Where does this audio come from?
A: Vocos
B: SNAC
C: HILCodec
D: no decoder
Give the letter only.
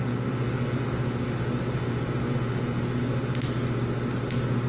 D